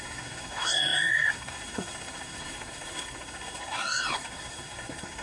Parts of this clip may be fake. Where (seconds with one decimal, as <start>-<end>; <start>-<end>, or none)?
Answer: 0.0-5.2